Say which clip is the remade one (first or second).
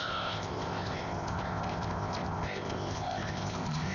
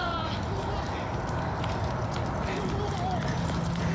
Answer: first